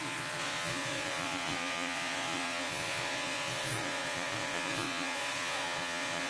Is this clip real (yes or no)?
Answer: no